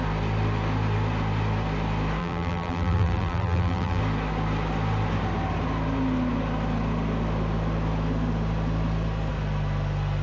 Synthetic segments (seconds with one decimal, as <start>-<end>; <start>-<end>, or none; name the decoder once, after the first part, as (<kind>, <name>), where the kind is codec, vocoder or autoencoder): 2.2-4.0 (vocoder, BigVGAN v2)